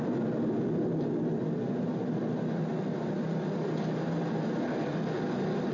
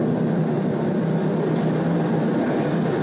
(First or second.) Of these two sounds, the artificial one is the second